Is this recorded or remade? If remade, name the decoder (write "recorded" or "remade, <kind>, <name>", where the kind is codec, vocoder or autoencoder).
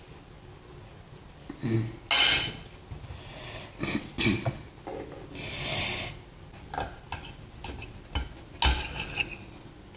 recorded